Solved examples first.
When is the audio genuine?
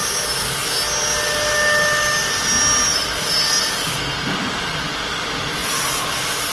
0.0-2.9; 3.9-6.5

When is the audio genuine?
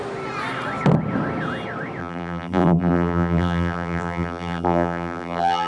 0.0-2.0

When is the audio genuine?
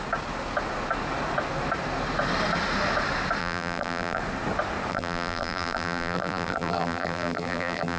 0.0-3.4; 4.2-4.9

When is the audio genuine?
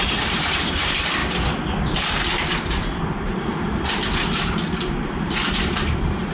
1.2-2.7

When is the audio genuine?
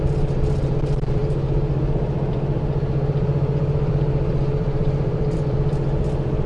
1.2-1.8